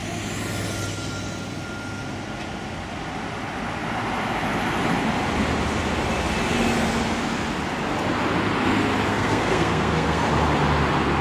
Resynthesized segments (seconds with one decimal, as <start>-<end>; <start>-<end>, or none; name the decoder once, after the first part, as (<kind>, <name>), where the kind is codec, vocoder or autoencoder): 9.1-10.3 (codec, SNAC)